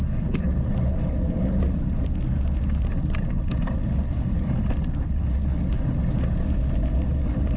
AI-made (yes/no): no